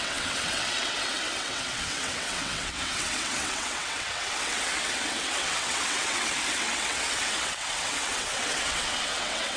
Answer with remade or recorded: remade